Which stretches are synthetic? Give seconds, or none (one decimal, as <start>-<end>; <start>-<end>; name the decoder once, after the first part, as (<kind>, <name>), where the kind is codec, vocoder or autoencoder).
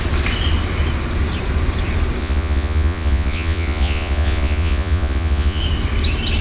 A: 2.2-5.6 (vocoder, Vocos)